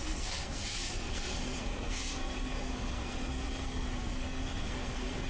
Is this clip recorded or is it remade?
remade